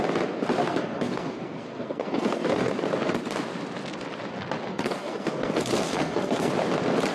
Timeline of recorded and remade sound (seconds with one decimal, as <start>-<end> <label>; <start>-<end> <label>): 0.0-0.6 recorded; 0.6-2.7 remade; 2.7-4.7 recorded; 4.7-6.5 remade; 6.5-7.1 recorded